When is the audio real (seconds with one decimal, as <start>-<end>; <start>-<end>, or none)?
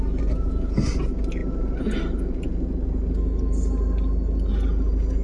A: 0.0-5.2